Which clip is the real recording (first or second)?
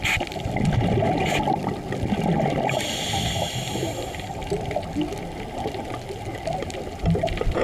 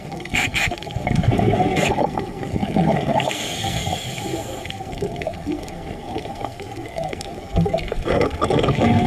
first